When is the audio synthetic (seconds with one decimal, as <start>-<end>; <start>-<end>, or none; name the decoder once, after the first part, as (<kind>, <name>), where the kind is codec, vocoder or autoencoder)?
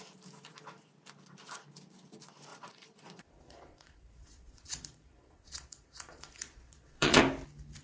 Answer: 2.5-7.2 (vocoder, Vocos)